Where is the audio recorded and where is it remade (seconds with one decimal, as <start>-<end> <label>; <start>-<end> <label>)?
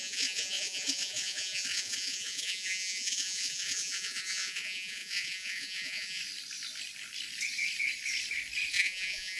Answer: 0.0-6.2 remade; 6.2-8.7 recorded; 8.7-9.4 remade